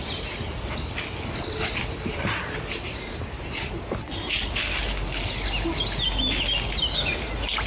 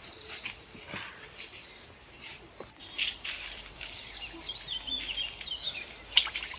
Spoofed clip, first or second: second